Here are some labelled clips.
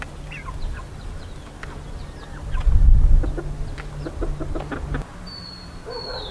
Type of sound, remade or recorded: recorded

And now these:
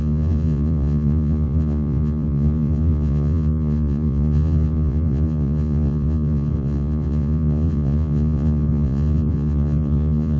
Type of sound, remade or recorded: remade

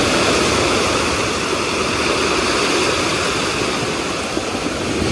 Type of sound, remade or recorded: recorded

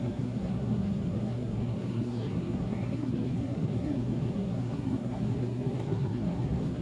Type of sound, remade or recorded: remade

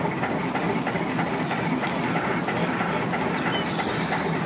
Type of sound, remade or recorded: recorded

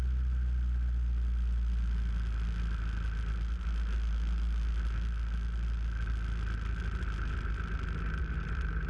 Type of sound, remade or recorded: recorded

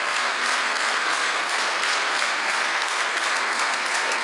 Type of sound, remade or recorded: remade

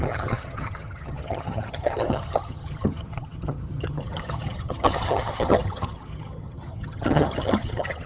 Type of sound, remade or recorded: remade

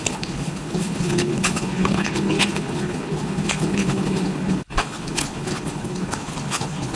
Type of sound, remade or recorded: remade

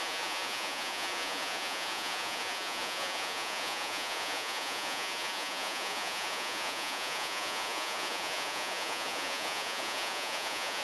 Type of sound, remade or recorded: remade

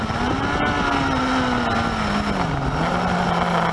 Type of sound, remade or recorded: recorded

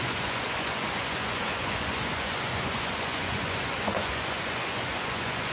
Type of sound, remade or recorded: remade